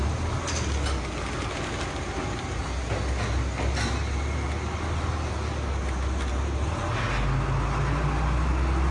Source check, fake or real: real